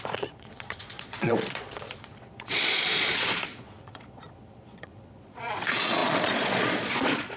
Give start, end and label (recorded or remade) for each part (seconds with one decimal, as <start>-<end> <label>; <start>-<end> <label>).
0.0-7.4 remade